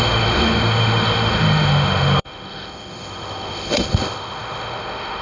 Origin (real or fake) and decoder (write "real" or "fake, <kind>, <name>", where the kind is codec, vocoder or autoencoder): fake, autoencoder, DAC-VAE